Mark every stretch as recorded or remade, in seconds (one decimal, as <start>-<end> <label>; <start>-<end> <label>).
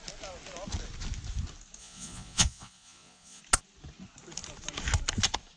0.0-1.8 recorded; 1.8-3.4 remade; 3.4-5.6 recorded